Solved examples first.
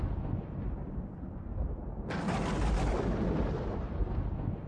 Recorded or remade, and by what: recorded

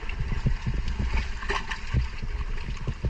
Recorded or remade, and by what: recorded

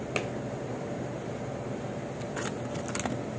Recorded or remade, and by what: recorded